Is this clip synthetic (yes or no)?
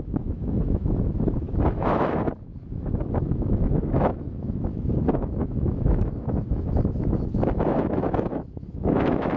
yes